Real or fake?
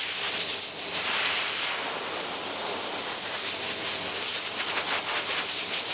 real